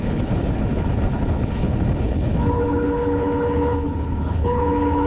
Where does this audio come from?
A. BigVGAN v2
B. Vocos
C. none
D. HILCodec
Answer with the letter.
D